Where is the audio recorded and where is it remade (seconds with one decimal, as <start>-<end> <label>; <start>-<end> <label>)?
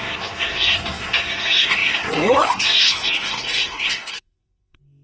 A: 0.0-5.0 remade